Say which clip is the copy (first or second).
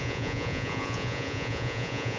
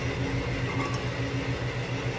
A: first